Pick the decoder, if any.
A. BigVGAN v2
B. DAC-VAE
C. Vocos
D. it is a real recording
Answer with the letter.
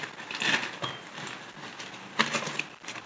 D